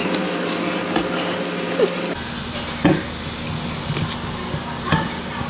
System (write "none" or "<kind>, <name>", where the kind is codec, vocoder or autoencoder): none